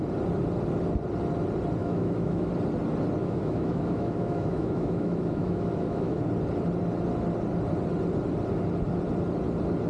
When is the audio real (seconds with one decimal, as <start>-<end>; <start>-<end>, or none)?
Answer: 0.0-1.8; 2.5-3.2; 6.2-9.9